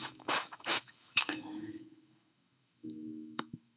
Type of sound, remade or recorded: remade